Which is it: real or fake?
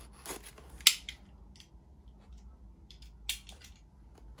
real